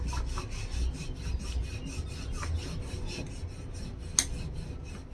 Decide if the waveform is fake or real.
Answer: real